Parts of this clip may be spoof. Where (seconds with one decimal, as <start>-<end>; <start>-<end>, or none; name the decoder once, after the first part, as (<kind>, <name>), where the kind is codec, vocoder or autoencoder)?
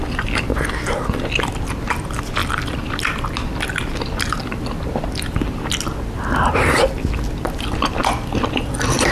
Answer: 2.4-5.7 (vocoder, BigVGAN v2); 8.0-9.1